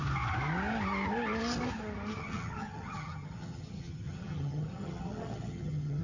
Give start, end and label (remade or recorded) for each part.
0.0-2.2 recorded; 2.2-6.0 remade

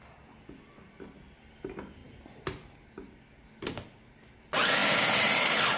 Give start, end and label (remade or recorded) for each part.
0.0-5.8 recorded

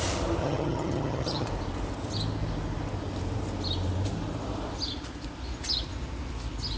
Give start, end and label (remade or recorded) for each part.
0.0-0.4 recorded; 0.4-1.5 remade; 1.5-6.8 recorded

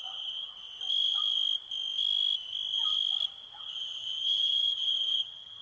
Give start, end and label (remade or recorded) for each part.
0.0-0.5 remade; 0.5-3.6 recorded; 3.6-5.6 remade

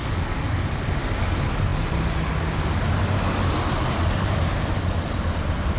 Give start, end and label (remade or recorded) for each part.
0.0-5.8 recorded